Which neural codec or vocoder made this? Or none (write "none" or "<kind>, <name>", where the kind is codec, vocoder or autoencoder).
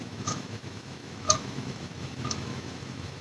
autoencoder, DAC-VAE